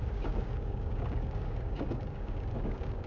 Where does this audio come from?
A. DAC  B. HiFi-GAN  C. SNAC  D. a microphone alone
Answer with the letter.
A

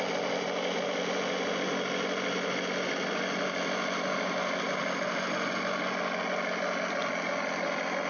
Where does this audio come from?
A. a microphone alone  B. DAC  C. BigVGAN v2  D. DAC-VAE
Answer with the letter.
A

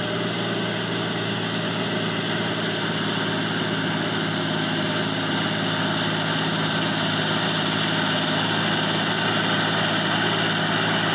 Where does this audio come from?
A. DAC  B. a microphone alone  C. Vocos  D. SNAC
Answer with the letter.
B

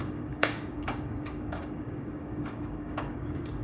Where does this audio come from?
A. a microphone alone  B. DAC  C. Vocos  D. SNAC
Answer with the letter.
B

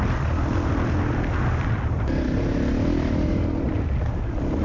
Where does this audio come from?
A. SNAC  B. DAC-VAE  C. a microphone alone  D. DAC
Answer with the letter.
C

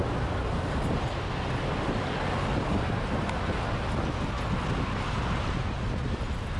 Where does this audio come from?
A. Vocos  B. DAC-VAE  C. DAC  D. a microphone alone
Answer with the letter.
D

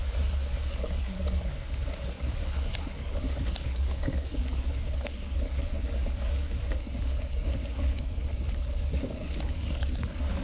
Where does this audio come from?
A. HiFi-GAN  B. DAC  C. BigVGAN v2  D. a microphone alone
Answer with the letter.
B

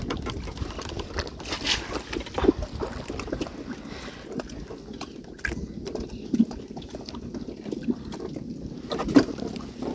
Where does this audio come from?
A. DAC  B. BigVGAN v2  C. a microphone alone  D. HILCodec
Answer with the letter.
C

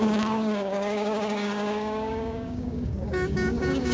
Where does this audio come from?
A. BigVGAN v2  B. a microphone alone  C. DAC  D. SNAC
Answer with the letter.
C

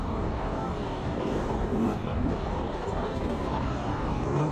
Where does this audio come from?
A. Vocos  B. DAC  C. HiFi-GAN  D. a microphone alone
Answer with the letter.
B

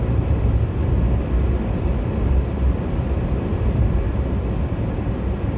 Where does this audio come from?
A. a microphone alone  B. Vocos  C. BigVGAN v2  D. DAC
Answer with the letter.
A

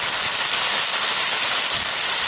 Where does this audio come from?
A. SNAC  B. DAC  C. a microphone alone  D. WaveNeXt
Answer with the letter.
C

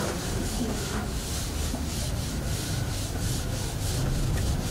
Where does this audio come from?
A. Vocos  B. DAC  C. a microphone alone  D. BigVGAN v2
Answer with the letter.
C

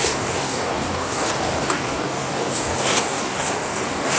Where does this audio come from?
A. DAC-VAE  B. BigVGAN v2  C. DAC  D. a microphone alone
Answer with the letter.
C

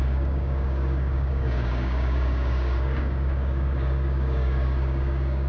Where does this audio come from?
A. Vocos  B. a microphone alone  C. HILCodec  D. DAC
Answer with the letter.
D